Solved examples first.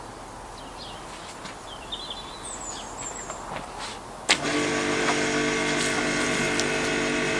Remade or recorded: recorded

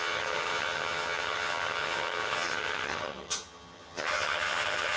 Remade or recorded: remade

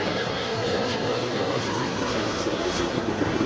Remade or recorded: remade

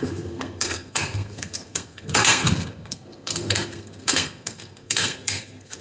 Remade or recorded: remade